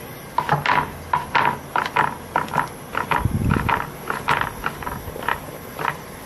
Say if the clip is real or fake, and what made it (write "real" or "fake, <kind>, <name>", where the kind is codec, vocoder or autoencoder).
real